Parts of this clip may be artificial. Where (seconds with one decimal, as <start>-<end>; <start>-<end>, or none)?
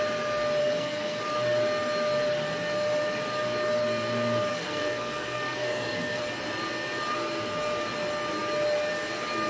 0.6-1.2; 4.5-6.2